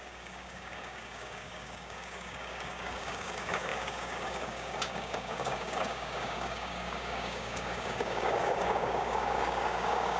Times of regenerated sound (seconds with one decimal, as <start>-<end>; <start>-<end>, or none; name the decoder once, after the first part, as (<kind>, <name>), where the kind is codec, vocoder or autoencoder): 0.0-10.2 (codec, DAC)